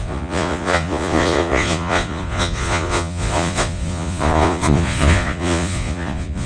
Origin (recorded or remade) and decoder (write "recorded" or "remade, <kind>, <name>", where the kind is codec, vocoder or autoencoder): remade, vocoder, Vocos